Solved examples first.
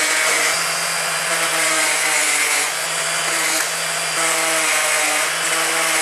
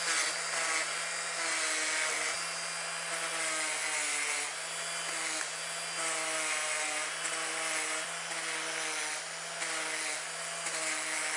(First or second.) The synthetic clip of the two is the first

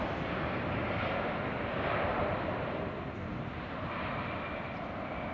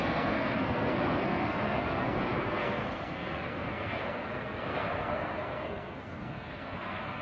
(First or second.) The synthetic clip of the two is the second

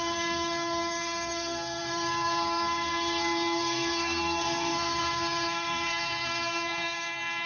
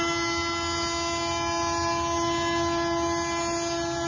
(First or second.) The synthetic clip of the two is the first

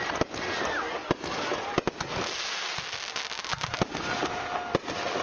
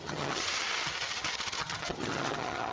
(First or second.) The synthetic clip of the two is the second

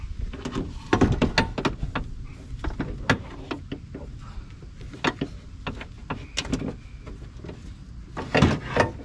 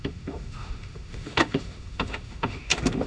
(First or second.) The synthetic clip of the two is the second